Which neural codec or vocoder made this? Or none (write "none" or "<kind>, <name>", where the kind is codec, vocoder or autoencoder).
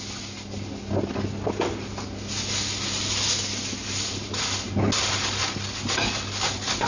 none